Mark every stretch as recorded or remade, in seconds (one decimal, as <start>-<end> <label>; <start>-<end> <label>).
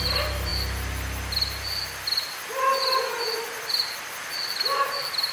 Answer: 0.0-5.3 recorded